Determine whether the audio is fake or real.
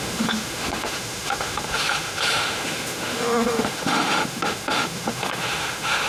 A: fake